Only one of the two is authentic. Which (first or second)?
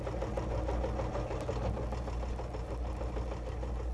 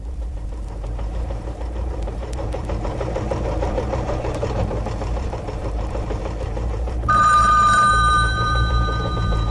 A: first